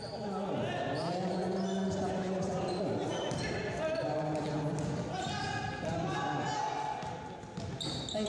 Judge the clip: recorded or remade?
recorded